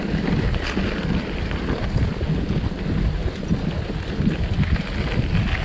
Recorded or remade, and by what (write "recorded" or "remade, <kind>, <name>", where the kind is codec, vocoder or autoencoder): recorded